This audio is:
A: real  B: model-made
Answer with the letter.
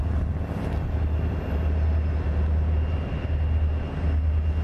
A